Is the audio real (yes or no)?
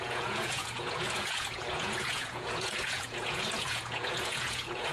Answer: no